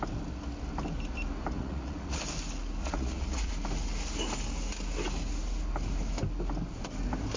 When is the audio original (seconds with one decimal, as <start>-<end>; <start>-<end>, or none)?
0.0-1.5; 2.2-2.8; 3.5-7.4